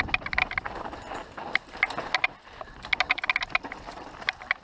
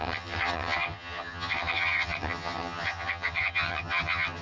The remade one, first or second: second